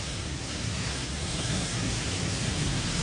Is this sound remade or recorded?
remade